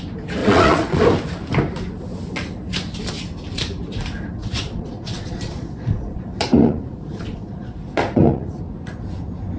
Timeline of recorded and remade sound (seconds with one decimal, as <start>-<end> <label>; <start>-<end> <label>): 0.0-0.4 recorded; 0.4-1.0 remade; 1.0-4.4 recorded; 4.4-8.6 remade; 8.6-9.6 recorded